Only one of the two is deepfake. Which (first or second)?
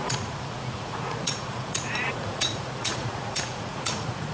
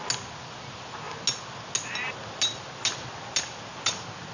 first